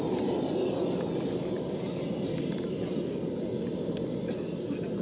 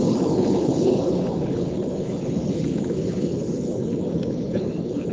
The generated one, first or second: second